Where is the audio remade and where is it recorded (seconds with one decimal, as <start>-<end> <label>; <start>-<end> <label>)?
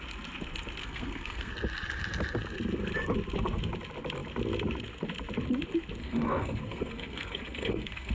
0.0-0.8 recorded; 0.8-1.5 remade; 1.5-6.0 recorded; 6.0-8.1 remade